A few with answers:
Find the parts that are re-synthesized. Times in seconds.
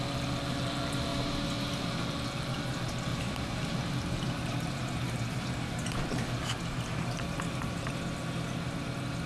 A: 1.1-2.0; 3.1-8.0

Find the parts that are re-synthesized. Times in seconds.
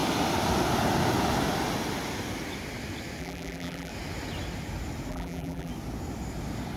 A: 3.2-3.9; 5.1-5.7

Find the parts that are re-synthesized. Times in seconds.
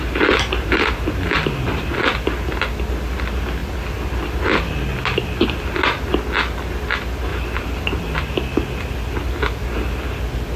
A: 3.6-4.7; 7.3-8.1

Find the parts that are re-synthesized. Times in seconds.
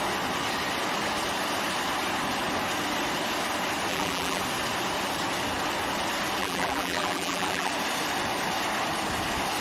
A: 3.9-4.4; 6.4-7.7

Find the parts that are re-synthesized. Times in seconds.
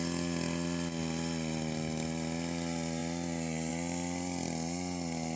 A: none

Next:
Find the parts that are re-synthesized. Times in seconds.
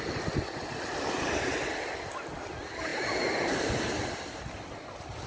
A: none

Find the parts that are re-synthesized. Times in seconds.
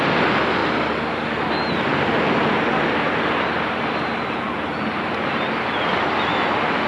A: 1.9-5.5